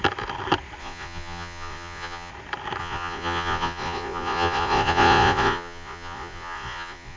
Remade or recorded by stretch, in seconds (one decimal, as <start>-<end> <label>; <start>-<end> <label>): 0.0-0.8 recorded; 0.8-2.3 remade; 2.3-2.8 recorded; 2.8-7.2 remade